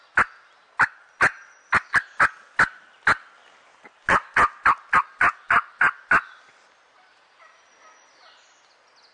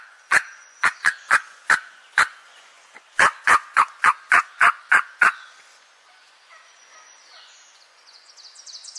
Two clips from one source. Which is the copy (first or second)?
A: second